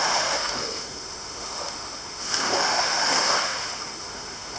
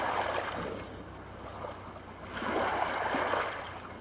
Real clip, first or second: second